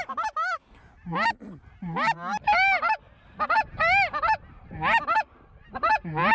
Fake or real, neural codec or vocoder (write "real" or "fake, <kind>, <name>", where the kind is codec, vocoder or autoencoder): real